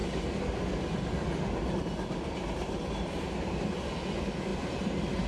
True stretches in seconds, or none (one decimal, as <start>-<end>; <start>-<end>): 0.0-5.3

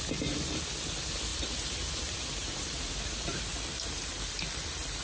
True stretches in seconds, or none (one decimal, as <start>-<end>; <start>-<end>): 0.0-1.3; 2.9-5.0

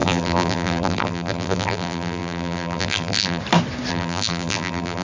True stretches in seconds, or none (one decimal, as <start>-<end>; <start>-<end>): 3.4-3.9

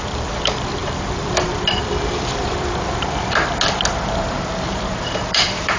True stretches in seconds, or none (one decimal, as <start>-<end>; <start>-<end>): none

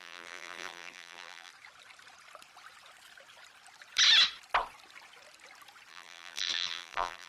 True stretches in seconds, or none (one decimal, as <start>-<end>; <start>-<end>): 1.5-5.9

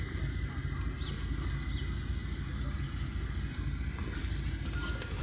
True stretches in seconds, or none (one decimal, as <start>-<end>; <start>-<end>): 0.0-5.2

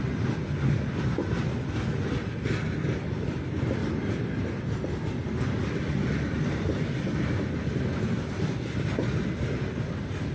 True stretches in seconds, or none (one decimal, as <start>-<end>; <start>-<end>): 0.0-10.3

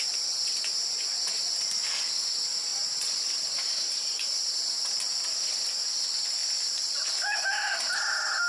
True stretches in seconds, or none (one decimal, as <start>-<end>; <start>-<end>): 0.0-2.7; 4.6-6.4